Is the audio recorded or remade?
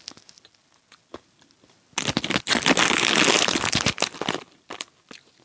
recorded